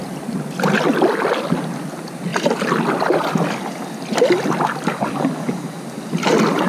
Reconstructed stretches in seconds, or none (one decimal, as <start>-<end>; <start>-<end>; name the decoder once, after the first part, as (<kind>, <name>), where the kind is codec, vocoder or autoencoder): none